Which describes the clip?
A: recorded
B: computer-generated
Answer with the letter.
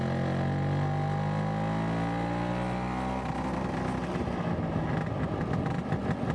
A